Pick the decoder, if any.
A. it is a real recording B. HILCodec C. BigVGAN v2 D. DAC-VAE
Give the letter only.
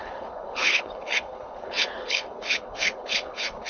B